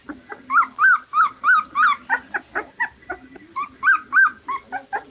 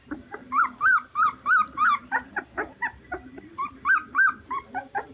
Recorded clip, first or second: first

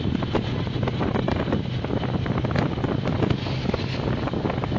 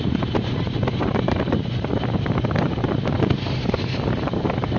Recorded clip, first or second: first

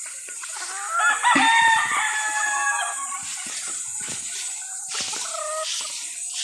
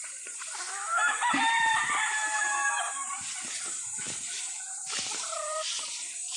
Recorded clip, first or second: first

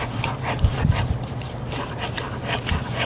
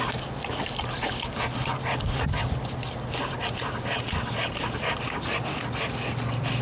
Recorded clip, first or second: second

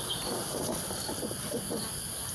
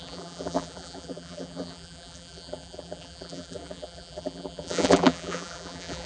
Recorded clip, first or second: first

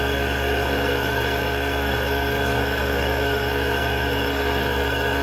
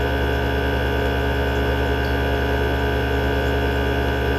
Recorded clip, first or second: second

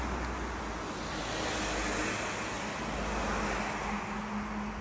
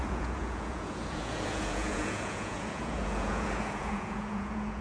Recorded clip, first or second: first